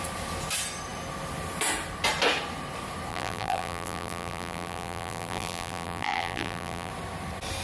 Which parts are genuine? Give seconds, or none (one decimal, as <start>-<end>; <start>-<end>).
0.0-3.1; 6.9-7.6